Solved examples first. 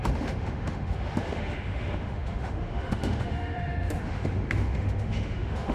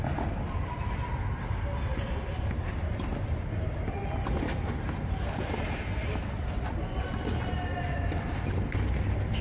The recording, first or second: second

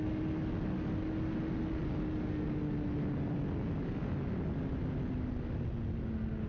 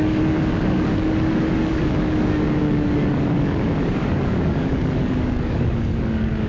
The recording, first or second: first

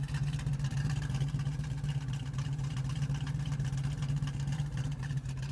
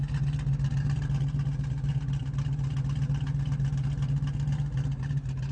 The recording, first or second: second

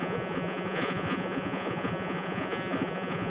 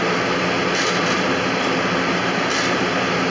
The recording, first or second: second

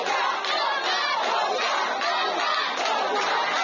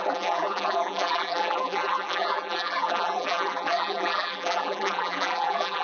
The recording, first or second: first